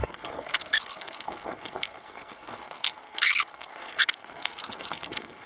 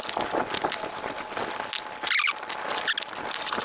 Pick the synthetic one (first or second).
first